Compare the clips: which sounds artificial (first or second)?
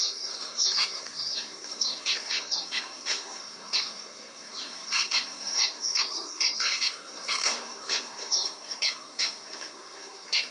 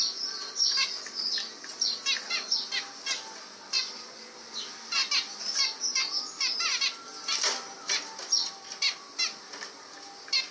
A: first